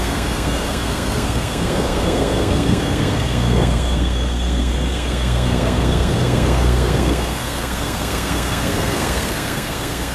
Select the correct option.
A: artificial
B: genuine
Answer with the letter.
A